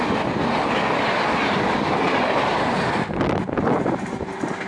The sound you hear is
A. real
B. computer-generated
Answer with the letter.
A